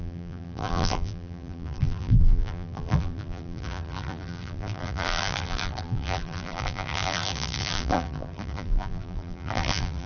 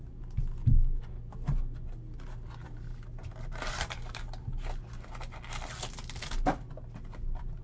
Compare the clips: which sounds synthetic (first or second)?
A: first